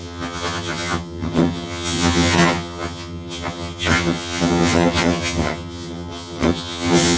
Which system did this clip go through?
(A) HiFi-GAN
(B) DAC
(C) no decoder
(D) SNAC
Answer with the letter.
A